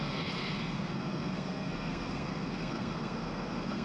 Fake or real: fake